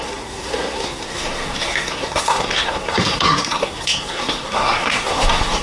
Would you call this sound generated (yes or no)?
yes